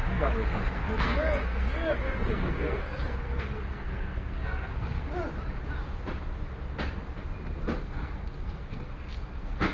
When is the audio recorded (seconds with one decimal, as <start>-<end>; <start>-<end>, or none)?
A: 5.1-7.8